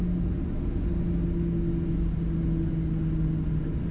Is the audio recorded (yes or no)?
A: yes